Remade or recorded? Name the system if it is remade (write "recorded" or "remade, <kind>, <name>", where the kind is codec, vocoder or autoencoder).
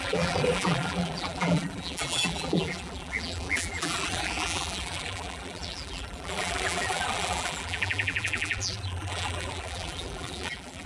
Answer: remade, vocoder, BigVGAN v2